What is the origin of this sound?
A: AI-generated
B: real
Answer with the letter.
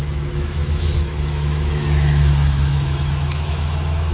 A